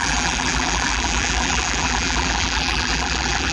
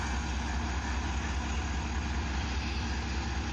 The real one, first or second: second